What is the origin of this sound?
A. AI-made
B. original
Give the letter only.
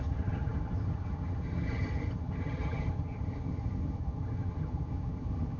A